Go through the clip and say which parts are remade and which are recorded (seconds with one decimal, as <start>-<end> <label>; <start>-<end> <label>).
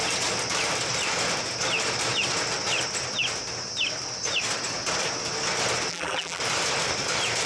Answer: 0.0-5.9 recorded; 5.9-6.4 remade; 6.4-7.5 recorded